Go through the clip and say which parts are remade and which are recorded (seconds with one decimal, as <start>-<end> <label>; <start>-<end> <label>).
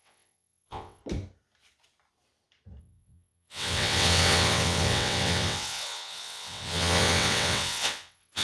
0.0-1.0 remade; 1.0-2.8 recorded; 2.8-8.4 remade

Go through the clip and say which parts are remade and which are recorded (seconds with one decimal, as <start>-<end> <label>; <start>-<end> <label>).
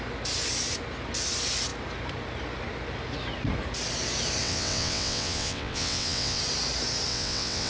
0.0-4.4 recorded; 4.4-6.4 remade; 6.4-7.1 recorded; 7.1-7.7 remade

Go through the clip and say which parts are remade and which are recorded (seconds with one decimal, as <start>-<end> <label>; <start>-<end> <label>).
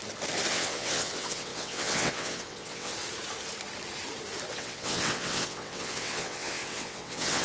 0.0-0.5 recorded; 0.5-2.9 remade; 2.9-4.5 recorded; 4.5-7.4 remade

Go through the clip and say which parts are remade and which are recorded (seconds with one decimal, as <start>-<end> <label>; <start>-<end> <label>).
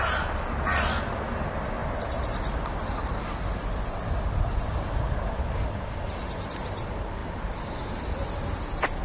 0.0-9.0 recorded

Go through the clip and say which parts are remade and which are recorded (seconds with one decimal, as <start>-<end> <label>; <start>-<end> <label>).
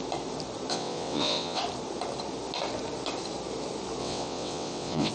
0.0-0.7 recorded; 0.7-1.6 remade; 1.6-4.0 recorded; 4.0-5.1 remade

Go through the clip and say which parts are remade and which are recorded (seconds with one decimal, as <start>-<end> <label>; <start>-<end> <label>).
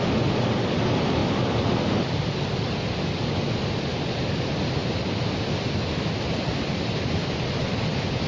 0.0-8.3 recorded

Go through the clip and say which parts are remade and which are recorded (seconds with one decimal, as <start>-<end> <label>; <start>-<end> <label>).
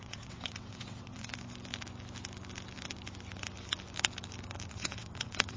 0.0-1.3 remade; 1.3-4.7 recorded; 4.7-5.6 remade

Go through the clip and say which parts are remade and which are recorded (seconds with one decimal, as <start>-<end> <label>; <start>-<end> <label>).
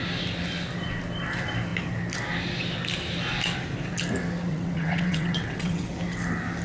0.0-4.5 recorded; 4.5-5.9 remade; 5.9-6.6 recorded